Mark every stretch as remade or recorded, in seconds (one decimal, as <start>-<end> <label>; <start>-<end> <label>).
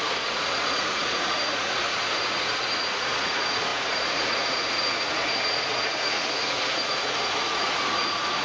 0.0-8.4 remade